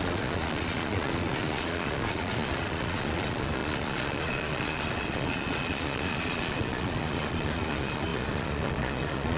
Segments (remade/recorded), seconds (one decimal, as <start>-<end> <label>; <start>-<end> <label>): 0.0-9.4 remade